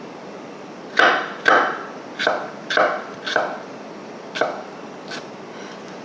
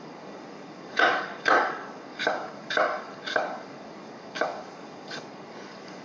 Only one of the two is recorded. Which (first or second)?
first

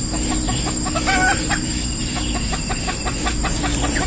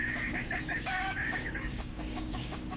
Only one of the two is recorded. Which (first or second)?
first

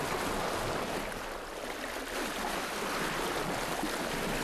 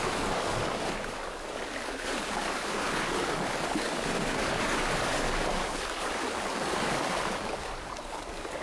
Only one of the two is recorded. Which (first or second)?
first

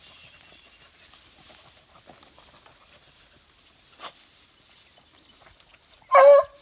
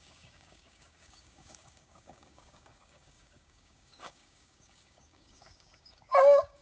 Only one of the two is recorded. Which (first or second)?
first